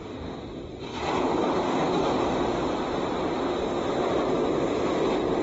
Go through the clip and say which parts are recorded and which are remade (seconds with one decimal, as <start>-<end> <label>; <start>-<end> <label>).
0.0-0.4 remade; 0.4-1.6 recorded; 1.6-2.0 remade; 2.0-5.4 recorded